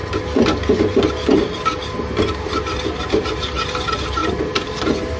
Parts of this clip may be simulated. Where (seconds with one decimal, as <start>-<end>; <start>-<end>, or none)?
none